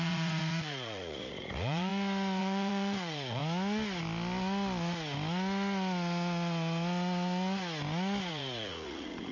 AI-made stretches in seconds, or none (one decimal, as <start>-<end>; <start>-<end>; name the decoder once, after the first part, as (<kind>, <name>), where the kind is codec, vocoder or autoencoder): 0.0-1.9 (vocoder, Vocos); 2.4-3.4; 8.3-9.3